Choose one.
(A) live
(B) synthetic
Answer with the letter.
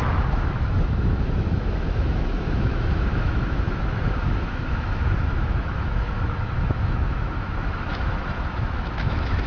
B